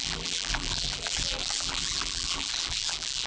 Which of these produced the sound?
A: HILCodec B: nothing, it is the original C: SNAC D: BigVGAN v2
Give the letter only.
D